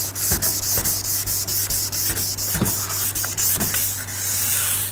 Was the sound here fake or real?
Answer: real